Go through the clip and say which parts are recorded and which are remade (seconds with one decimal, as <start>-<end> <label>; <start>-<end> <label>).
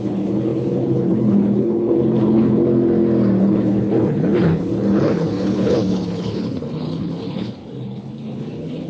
0.0-2.6 remade; 2.6-3.4 recorded; 3.4-8.9 remade